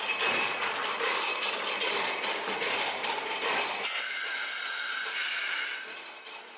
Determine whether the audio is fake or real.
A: real